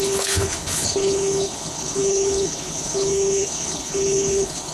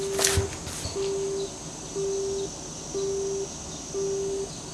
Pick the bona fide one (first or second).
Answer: second